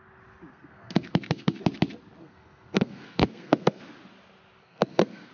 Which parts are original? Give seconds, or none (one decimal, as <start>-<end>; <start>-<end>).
0.0-0.5; 1.6-2.2; 3.8-4.6